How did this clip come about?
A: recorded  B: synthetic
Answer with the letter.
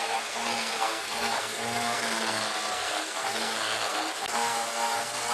B